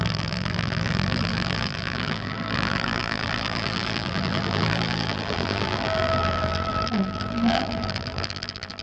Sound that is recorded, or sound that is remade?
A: remade